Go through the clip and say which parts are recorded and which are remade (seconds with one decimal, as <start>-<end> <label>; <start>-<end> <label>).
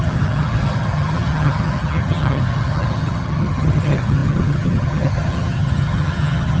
0.0-6.6 remade